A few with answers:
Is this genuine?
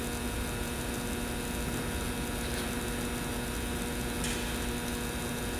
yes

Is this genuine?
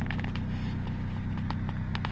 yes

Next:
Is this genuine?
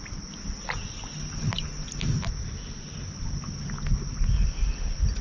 yes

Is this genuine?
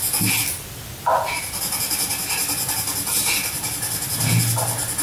yes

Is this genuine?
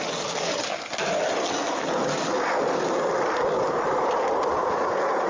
yes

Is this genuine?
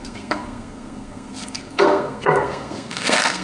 no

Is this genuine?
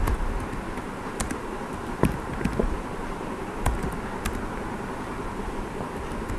yes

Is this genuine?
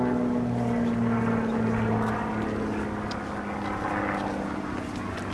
yes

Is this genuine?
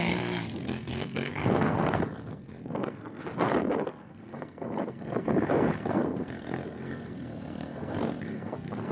no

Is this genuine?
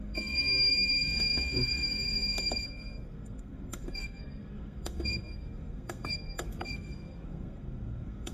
no